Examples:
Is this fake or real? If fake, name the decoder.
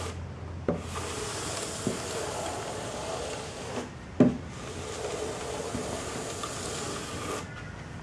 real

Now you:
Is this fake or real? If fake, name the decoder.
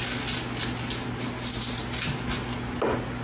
real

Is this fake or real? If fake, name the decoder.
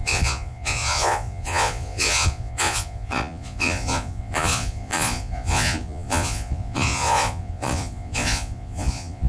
fake, vocoder, Vocos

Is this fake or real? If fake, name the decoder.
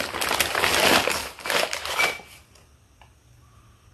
real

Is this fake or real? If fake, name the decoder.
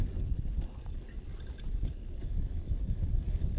real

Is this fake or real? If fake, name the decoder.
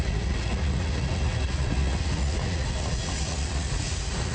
fake, vocoder, Vocos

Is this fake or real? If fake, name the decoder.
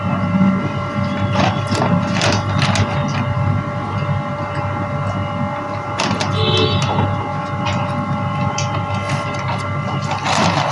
real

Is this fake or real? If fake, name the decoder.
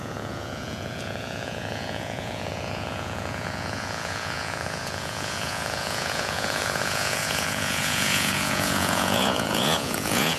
fake, vocoder, Vocos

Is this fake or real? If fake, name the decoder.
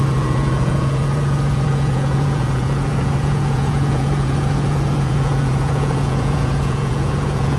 fake, vocoder, Vocos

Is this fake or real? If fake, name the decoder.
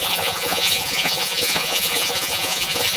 fake, vocoder, Vocos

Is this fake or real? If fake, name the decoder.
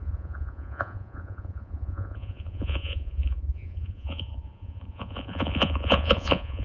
fake, vocoder, Vocos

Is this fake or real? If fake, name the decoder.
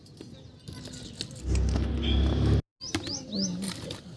real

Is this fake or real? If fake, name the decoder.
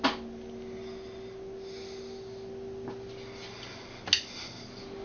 real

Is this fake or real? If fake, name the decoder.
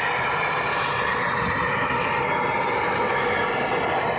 real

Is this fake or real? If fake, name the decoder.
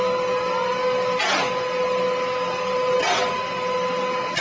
real